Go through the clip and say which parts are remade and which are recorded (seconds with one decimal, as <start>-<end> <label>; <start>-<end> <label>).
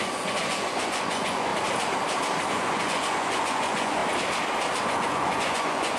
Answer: 0.0-1.5 remade; 1.5-2.5 recorded; 2.5-4.0 remade; 4.0-4.8 recorded; 4.8-6.0 remade